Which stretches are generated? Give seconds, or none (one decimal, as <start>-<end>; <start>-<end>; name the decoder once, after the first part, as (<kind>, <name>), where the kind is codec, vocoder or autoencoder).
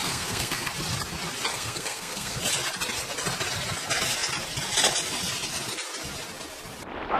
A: 0.0-0.7 (codec, SNAC); 1.5-2.4